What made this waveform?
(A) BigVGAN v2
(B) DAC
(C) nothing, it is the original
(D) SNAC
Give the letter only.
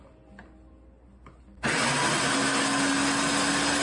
C